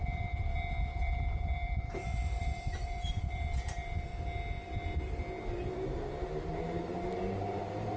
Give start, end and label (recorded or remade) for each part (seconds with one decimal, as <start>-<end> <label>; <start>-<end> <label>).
0.0-4.1 remade; 4.1-5.7 recorded; 5.7-8.0 remade

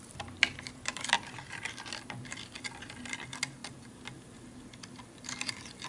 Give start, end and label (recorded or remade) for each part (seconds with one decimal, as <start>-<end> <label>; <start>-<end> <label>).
0.0-3.6 remade; 3.6-4.6 recorded; 4.6-5.9 remade

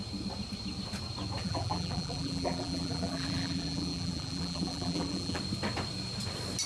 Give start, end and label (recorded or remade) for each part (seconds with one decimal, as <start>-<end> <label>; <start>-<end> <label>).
0.0-1.4 recorded; 1.4-5.4 remade; 5.4-6.7 recorded

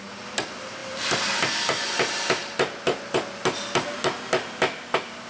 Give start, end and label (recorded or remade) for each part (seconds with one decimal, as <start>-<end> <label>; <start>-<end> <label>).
0.0-0.8 recorded; 0.8-1.5 remade; 1.5-5.3 recorded

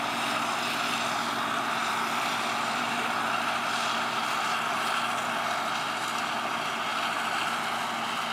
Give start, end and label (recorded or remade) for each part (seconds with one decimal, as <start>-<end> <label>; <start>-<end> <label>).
0.0-1.8 recorded; 1.8-3.6 remade; 3.6-6.9 recorded; 6.9-7.5 remade; 7.5-8.3 recorded

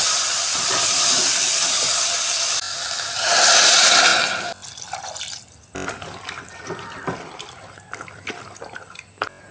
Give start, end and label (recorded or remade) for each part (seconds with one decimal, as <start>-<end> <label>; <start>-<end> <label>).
0.0-9.5 recorded